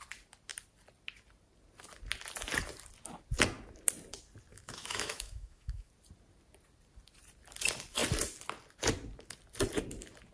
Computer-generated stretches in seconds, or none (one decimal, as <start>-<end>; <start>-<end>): 4.5-5.9